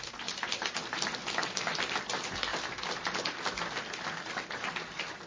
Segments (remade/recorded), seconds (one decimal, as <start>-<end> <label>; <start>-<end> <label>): 0.0-5.3 recorded